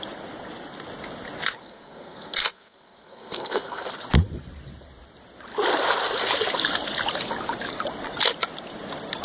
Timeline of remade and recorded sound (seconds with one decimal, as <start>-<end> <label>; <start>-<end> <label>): 0.0-1.6 recorded; 1.6-3.9 remade; 3.9-9.2 recorded